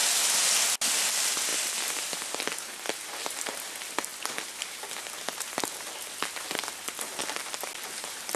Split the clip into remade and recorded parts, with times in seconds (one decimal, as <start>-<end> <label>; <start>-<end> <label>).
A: 0.0-8.4 recorded